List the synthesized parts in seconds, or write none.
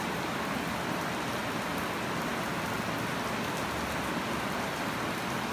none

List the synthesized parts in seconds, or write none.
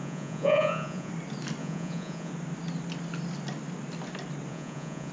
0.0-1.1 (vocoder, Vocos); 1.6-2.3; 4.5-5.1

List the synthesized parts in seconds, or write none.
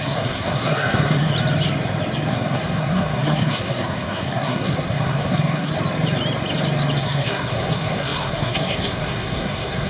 0.0-1.3 (codec, SNAC); 2.3-5.7; 7.0-9.9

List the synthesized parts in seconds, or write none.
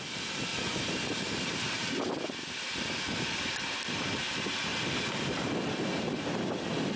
0.5-4.0 (vocoder, BigVGAN v2)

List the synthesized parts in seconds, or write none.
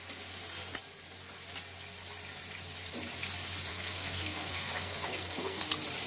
3.7-5.6 (codec, SNAC)